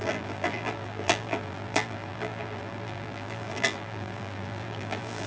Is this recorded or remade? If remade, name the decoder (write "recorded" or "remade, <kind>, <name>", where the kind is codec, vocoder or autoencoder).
remade, vocoder, BigVGAN v2